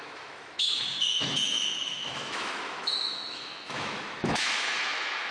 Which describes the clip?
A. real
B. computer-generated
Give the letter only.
B